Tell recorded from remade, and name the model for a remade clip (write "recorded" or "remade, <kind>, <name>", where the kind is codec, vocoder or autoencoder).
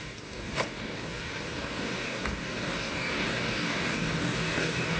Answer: remade, codec, DAC